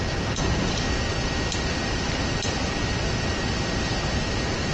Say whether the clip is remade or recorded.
recorded